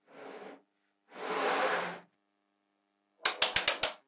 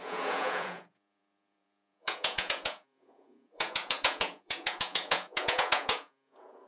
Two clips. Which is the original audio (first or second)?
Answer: first